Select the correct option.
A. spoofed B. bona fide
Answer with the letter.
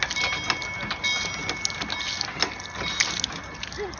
B